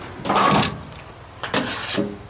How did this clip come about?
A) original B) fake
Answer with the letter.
A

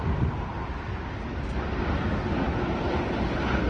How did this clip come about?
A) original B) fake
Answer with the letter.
A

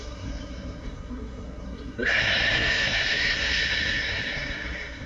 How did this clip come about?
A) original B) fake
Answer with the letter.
B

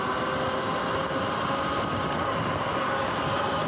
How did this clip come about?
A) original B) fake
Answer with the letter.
A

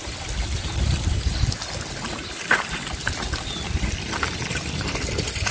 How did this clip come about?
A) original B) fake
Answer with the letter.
A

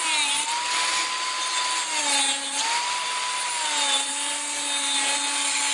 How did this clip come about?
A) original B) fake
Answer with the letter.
A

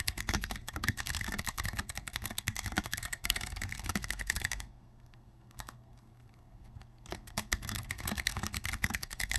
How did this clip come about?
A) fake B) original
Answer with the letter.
A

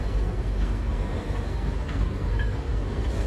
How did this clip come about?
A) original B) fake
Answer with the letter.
B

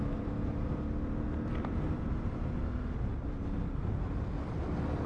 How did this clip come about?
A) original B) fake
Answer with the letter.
A